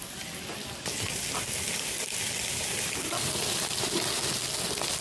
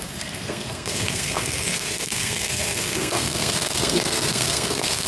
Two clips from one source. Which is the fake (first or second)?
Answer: second